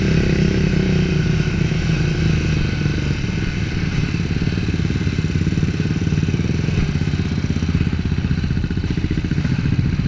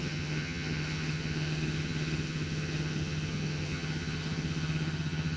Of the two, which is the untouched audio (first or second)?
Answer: first